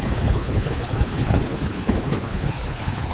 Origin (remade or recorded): remade